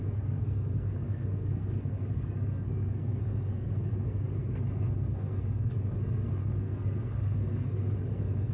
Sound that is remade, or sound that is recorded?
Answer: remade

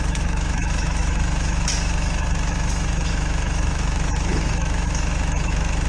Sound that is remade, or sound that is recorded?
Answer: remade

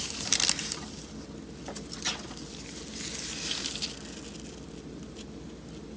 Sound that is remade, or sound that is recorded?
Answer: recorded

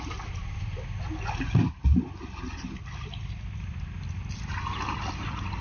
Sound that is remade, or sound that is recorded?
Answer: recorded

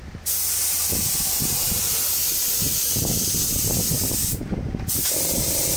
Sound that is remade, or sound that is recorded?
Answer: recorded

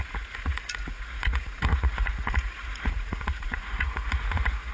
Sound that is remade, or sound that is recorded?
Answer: remade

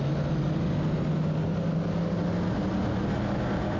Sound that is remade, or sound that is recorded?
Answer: recorded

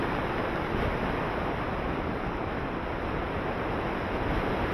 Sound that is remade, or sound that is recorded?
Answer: recorded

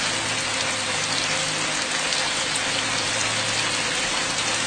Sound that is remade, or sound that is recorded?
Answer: recorded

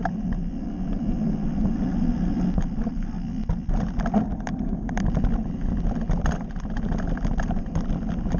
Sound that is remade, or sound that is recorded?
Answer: recorded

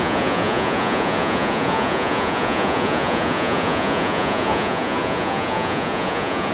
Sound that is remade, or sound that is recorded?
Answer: remade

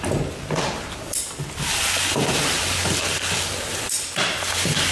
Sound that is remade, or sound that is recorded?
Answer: recorded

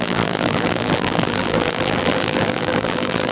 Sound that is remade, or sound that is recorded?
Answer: remade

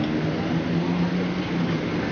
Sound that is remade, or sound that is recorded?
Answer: recorded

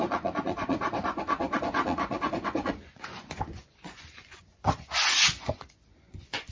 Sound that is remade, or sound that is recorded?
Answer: remade